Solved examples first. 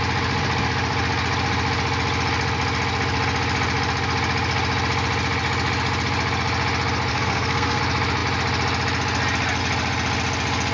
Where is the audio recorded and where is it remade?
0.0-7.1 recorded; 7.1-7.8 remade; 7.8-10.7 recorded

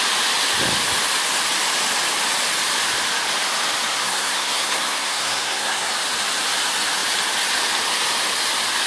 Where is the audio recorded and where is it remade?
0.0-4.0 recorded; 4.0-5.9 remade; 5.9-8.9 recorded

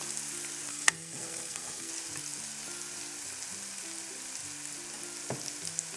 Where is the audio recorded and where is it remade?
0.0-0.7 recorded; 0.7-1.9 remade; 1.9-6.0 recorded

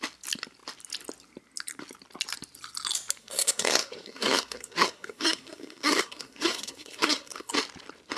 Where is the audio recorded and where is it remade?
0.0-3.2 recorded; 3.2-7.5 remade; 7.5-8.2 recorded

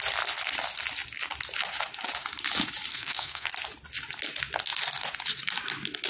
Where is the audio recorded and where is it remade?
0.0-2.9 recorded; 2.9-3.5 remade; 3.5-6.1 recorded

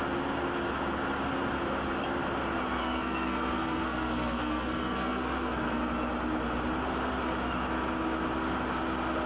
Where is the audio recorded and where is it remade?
0.0-2.8 recorded; 2.8-5.8 remade; 5.8-9.3 recorded

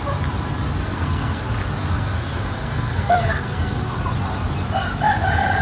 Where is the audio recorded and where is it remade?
0.0-0.8 recorded; 0.8-1.4 remade; 1.4-1.9 recorded; 1.9-4.0 remade; 4.0-5.6 recorded